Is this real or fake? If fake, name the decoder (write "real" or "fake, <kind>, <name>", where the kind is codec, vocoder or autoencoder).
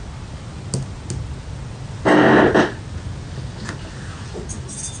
real